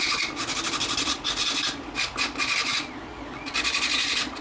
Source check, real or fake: real